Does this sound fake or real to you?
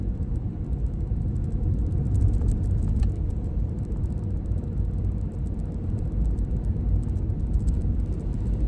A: fake